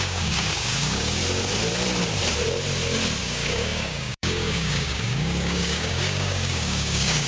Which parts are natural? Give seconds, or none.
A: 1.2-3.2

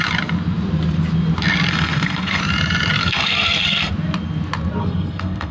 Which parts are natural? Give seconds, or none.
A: 0.0-1.7; 2.4-3.0; 3.9-4.8

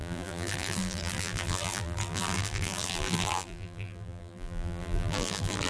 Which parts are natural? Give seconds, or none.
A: none

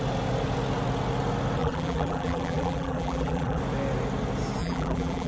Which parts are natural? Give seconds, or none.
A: 0.0-1.6; 3.6-4.6